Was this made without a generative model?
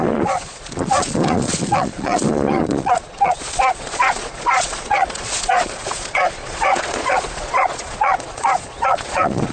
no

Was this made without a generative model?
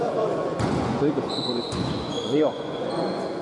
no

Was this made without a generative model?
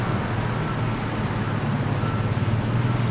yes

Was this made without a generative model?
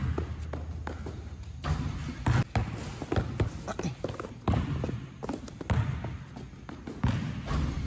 yes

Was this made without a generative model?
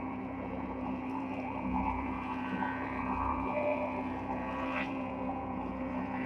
no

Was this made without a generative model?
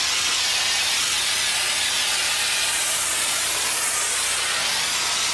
yes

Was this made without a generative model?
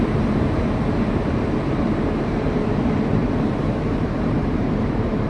no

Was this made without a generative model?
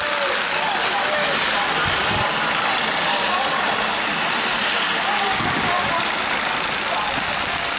yes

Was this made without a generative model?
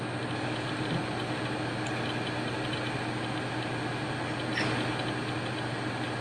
yes